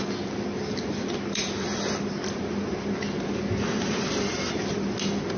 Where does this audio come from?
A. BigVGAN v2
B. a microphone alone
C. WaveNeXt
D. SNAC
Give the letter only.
B